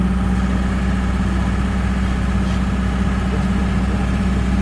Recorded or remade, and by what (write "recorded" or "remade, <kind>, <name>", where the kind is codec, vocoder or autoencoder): recorded